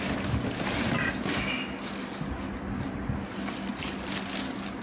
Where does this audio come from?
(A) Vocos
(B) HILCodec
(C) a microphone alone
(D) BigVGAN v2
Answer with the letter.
C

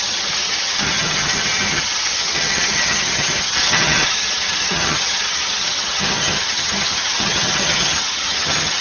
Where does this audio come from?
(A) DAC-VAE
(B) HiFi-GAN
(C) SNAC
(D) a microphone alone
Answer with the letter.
B